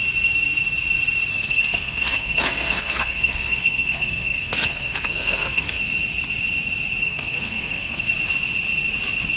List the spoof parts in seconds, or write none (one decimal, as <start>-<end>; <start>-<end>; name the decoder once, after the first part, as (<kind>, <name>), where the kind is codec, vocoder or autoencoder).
1.3-5.8 (codec, SNAC); 7.0-8.1